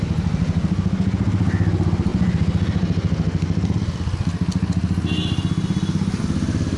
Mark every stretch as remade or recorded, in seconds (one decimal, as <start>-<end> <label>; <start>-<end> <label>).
0.0-6.8 recorded